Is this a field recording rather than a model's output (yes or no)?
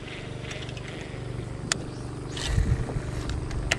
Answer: yes